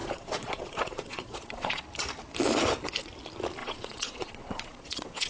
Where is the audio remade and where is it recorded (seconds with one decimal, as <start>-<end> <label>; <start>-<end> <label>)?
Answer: 0.0-1.8 remade; 1.8-3.6 recorded; 3.6-5.3 remade